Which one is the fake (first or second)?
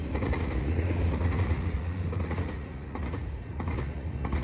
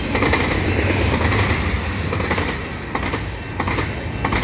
first